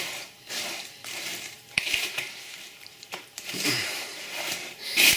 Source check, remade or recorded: remade